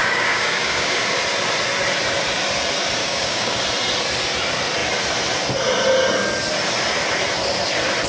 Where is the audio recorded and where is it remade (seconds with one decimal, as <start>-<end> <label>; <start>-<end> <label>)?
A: 0.0-1.0 remade; 1.0-3.0 recorded; 3.0-3.6 remade; 3.6-8.1 recorded